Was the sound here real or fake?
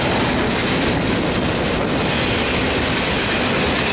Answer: real